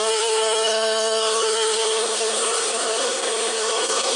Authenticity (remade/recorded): remade